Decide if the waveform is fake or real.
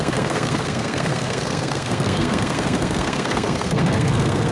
fake